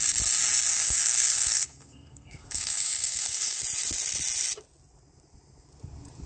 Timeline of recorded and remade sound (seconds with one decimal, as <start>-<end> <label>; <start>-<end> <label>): 0.0-0.7 recorded; 0.7-3.6 remade; 3.6-6.3 recorded